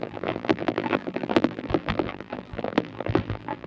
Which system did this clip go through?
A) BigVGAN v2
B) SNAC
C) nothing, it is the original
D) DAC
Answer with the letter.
A